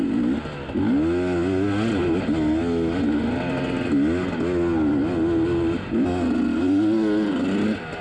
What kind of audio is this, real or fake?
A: real